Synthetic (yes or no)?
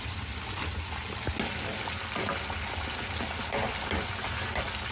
no